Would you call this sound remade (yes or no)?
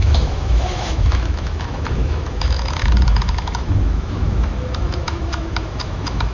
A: yes